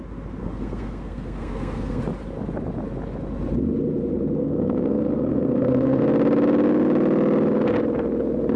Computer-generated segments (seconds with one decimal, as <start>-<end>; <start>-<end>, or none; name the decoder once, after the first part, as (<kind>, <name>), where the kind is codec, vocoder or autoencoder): 0.4-2.0 (codec, SNAC); 4.4-6.0